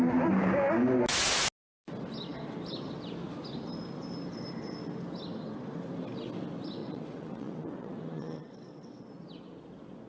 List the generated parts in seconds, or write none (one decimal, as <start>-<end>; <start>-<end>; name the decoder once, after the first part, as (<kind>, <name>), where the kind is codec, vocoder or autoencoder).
6.8-9.1 (vocoder, WaveNeXt)